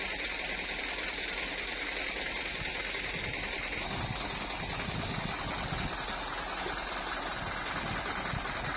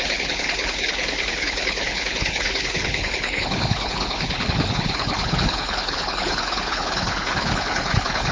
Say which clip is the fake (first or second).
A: second